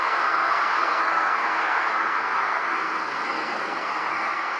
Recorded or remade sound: remade